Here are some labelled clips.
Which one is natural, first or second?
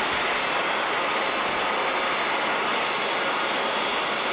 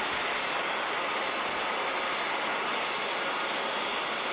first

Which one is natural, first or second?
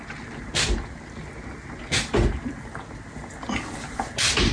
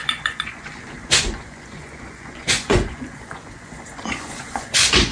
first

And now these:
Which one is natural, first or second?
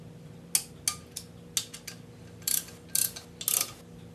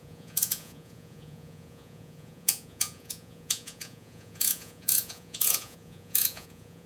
first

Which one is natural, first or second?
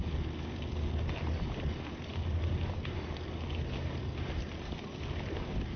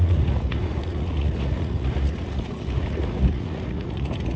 first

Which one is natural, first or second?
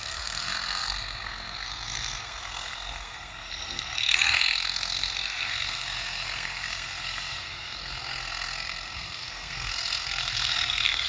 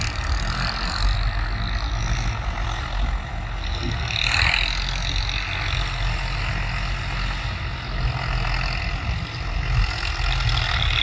second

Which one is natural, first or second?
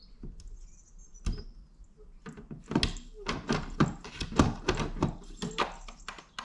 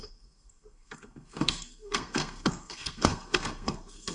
first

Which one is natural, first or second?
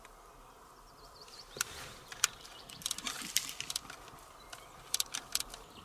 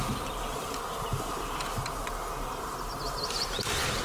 second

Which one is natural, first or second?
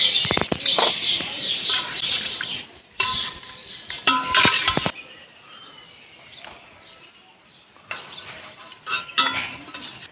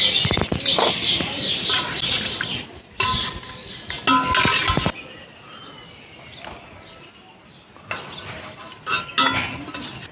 second